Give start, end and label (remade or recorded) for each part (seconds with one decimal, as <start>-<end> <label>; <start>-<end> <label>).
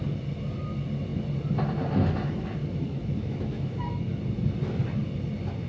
0.0-2.6 recorded; 2.6-4.2 remade; 4.2-5.7 recorded